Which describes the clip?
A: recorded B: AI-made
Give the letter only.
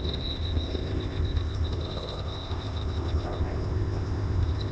B